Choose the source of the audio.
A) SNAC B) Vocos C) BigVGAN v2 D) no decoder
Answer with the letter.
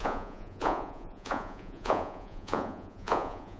B